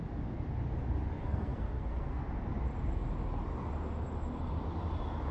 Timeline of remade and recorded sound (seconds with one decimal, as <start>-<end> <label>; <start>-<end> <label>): 0.0-1.2 recorded; 1.2-2.2 remade; 2.2-5.3 recorded